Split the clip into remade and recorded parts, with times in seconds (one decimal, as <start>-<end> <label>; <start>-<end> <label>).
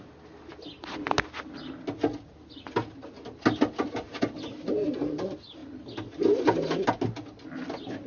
0.0-8.1 recorded